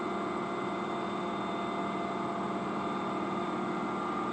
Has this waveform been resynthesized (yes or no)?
no